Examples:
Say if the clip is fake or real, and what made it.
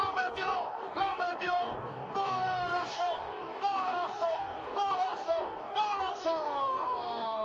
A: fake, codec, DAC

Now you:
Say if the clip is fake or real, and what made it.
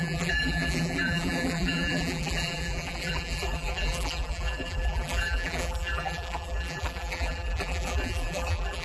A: fake, vocoder, BigVGAN v2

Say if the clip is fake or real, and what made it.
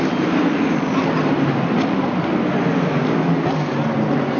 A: real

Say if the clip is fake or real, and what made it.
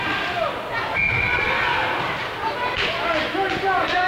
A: real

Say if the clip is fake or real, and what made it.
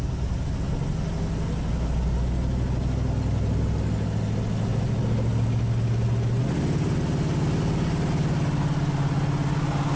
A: real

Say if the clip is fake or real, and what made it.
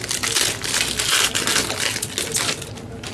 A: real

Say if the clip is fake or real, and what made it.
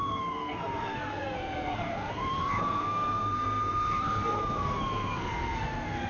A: fake, codec, SNAC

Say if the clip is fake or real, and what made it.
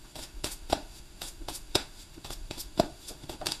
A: fake, autoencoder, DAC-VAE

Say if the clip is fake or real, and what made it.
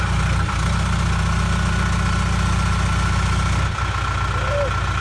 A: real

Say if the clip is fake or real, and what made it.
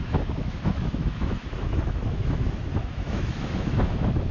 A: fake, autoencoder, DAC-VAE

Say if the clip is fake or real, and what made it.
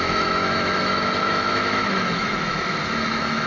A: fake, autoencoder, DAC-VAE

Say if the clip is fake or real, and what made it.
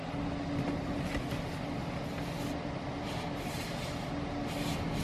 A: real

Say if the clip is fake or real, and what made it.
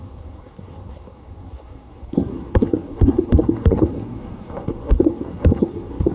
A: fake, codec, SNAC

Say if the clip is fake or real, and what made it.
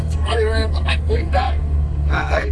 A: fake, codec, SNAC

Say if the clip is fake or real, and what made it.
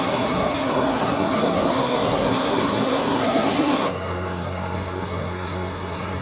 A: fake, codec, SNAC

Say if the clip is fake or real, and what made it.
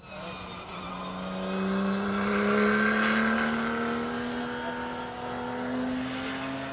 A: real